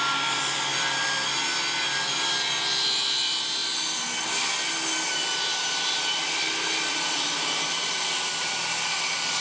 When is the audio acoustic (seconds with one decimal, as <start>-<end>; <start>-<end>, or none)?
0.0-0.7; 1.8-5.2; 7.2-9.4